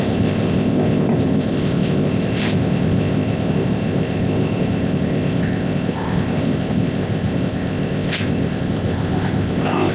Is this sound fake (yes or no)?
yes